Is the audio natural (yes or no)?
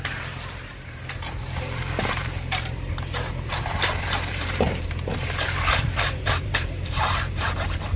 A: no